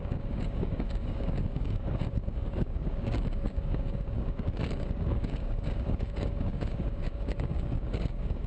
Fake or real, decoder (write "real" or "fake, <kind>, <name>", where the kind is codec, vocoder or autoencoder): fake, codec, DAC